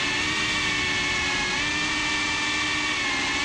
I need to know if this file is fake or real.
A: real